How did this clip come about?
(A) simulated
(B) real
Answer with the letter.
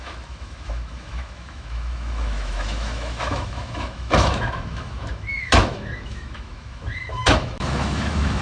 A